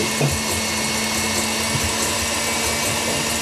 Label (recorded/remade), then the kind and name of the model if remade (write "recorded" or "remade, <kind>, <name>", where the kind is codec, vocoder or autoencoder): recorded